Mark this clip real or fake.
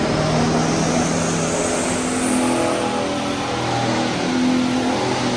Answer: real